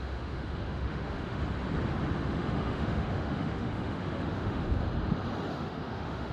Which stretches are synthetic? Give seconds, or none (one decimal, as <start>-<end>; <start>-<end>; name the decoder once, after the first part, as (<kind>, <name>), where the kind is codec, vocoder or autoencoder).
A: 0.0-1.4 (autoencoder, DAC-VAE); 2.2-4.6; 5.5-6.3